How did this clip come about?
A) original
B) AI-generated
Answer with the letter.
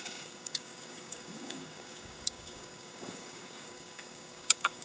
B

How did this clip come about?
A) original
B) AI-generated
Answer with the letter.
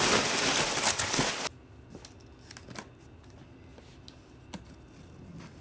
A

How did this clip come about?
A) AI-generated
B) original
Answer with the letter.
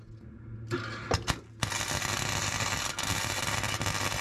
B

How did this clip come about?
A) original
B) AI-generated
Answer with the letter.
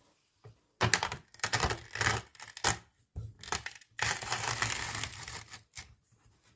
A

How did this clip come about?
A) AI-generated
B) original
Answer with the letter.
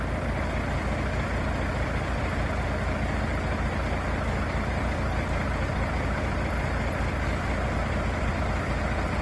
B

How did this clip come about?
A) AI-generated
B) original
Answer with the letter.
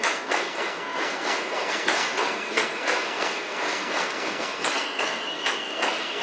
A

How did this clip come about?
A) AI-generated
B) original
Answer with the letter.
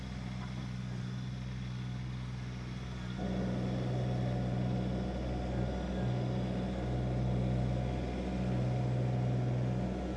B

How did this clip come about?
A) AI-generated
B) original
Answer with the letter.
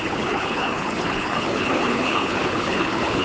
A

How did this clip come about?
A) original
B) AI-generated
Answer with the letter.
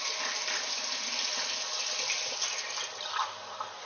A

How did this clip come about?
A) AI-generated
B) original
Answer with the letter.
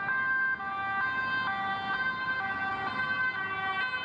B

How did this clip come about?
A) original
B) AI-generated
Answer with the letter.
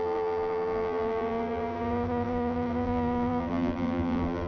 B